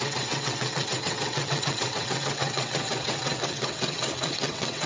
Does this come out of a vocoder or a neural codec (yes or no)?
yes